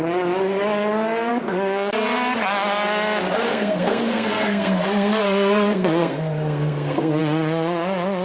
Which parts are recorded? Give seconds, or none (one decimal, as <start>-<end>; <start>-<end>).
0.0-1.3; 1.9-3.5; 7.2-8.2